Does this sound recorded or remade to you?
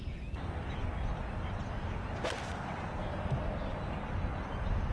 recorded